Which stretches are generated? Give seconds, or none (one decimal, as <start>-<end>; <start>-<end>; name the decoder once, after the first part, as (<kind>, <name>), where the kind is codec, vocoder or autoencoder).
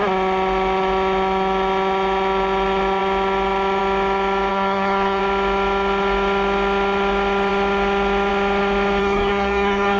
4.5-5.2 (codec, SNAC); 9.0-10.0